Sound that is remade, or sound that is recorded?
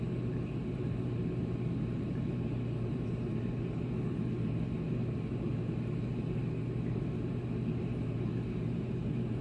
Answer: remade